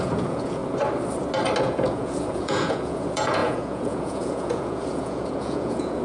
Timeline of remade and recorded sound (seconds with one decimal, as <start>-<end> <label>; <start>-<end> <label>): 0.0-0.6 remade; 0.6-1.6 recorded; 1.6-6.0 remade